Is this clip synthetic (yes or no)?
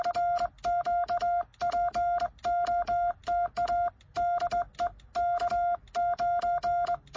no